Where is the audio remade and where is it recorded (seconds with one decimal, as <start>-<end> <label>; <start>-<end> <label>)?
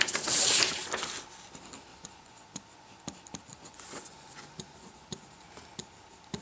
0.0-1.9 recorded; 1.9-3.0 remade; 3.0-3.5 recorded; 3.5-5.5 remade; 5.5-6.4 recorded